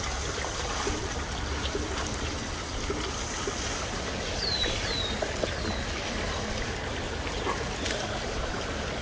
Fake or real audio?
real